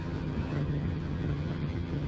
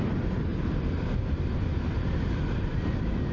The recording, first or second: second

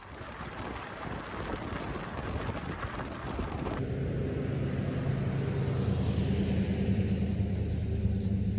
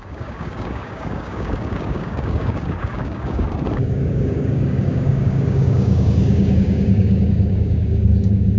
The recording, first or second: first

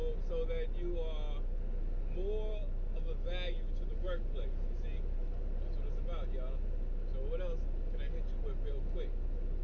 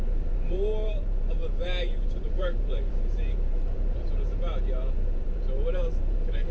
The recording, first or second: first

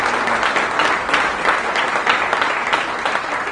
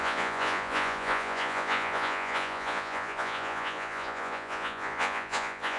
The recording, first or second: first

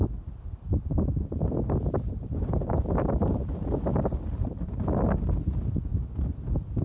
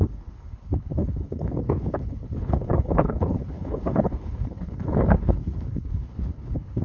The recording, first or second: first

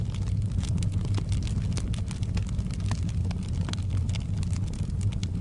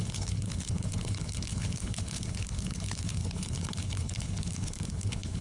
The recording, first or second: first